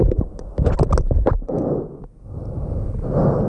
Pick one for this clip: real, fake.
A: real